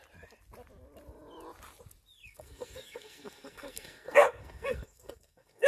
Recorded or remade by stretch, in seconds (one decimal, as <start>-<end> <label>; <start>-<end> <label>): 0.0-2.2 recorded; 2.2-5.7 remade